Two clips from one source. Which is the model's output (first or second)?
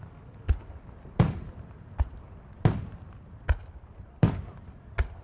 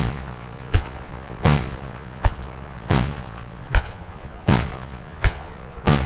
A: second